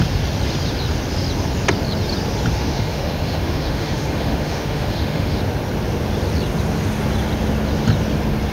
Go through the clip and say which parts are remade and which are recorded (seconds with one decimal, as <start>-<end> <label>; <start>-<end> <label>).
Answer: 0.0-2.5 recorded; 2.5-5.4 remade; 5.4-8.5 recorded